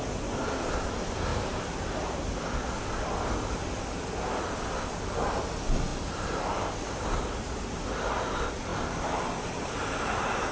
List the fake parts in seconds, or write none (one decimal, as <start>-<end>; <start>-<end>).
1.3-2.3; 5.9-8.1